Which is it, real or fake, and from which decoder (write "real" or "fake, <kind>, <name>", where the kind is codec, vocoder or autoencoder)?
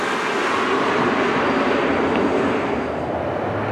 real